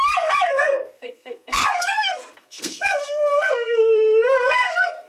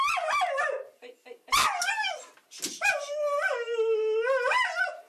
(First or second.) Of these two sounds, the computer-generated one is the first